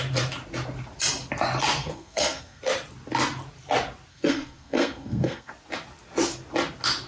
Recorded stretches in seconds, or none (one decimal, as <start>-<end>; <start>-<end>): 0.0-1.8; 2.6-4.1; 5.5-7.1